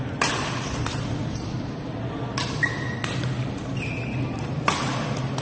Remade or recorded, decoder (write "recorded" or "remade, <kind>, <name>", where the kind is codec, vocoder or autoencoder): recorded